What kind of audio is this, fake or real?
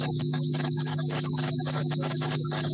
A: fake